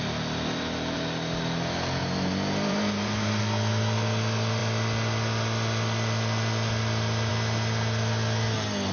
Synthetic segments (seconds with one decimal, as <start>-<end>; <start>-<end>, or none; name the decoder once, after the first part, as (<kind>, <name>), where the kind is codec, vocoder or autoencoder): 2.0-3.4 (vocoder, BigVGAN v2)